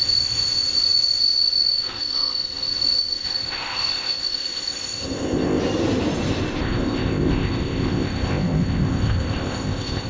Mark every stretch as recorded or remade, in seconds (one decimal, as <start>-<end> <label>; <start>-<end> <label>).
0.0-5.6 remade; 5.6-6.6 recorded; 6.6-10.1 remade